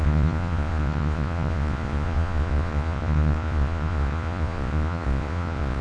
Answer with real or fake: fake